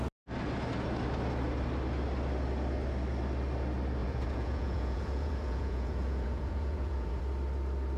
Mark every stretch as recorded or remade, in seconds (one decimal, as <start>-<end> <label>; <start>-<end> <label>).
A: 0.0-4.0 recorded; 4.0-7.2 remade; 7.2-8.0 recorded